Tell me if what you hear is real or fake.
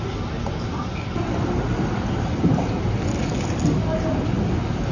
real